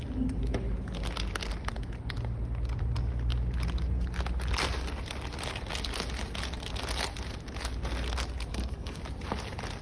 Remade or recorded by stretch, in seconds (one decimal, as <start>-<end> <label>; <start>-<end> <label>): 0.0-8.5 recorded; 8.5-9.0 remade; 9.0-9.8 recorded